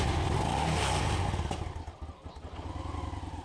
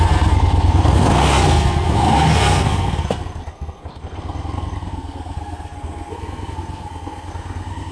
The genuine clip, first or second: first